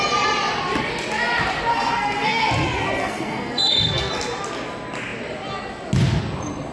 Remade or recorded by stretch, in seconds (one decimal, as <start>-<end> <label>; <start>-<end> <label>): 0.0-1.7 recorded; 1.7-2.4 remade; 2.4-3.0 recorded; 3.0-4.1 remade; 4.1-6.7 recorded